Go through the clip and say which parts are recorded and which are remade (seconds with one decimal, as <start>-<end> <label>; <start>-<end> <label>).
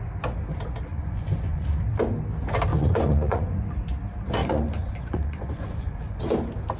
0.0-0.9 recorded; 0.9-1.8 remade; 1.8-2.7 recorded; 2.7-3.6 remade; 3.6-4.4 recorded; 4.4-6.2 remade; 6.2-6.8 recorded